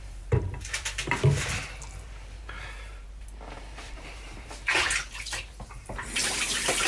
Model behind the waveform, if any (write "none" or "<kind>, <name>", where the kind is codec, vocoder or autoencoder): vocoder, BigVGAN v2